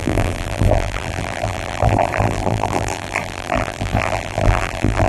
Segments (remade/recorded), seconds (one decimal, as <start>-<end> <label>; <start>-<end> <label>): 0.0-5.1 remade